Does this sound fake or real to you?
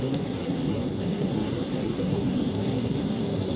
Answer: fake